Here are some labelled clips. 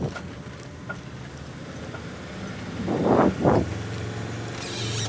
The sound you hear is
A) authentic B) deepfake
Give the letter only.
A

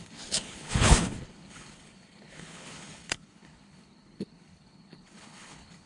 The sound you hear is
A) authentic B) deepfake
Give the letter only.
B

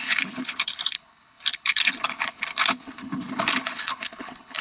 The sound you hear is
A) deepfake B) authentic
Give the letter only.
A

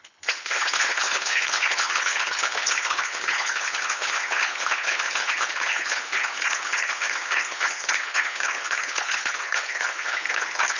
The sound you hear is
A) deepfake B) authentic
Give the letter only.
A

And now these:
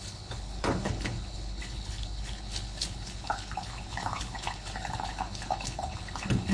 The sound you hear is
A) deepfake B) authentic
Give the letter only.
A